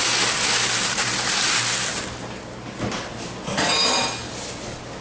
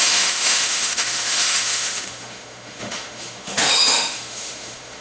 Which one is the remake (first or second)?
second